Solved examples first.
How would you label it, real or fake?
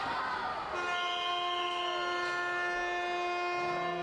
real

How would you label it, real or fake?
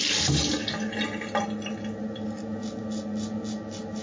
real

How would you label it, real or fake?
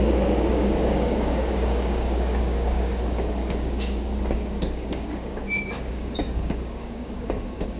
fake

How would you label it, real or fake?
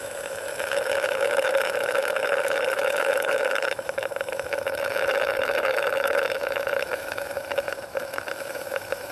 fake